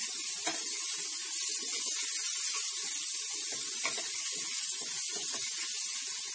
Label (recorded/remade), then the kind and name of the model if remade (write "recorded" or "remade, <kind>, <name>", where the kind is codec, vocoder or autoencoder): recorded